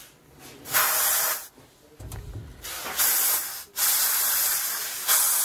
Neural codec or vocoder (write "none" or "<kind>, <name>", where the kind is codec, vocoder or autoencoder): none